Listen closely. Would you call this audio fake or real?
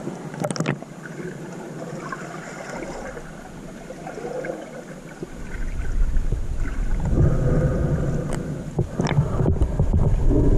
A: real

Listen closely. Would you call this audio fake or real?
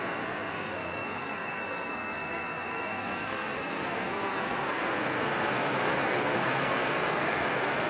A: fake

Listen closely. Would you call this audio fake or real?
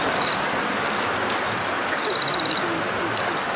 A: real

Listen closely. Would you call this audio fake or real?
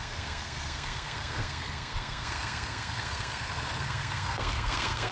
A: fake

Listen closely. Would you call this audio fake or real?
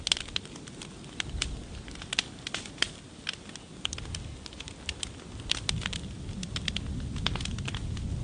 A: real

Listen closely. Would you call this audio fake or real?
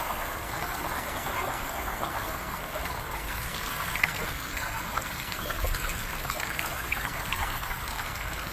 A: fake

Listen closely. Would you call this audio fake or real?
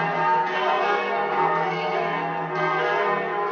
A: fake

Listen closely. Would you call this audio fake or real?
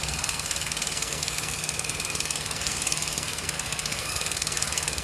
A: fake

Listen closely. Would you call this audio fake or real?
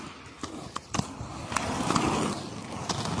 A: real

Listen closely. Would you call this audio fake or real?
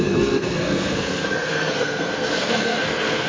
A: fake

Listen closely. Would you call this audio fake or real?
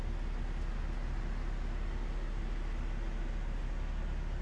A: real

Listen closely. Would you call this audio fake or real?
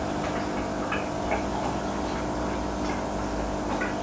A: real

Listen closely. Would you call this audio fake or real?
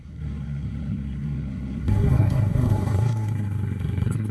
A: fake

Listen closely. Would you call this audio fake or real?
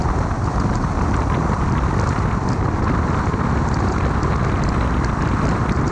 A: real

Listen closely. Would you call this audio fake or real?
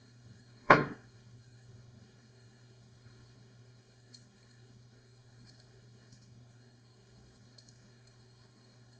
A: fake